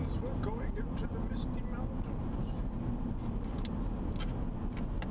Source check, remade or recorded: recorded